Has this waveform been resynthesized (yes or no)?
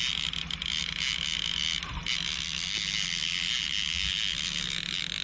no